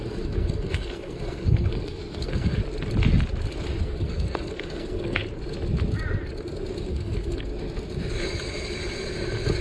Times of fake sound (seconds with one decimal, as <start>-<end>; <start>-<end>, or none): 0.0-2.6; 3.8-5.2; 6.9-7.5